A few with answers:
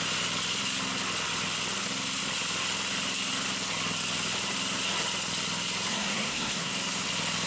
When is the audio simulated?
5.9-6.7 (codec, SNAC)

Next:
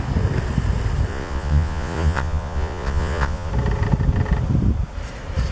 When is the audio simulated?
1.1-3.5 (vocoder, Vocos)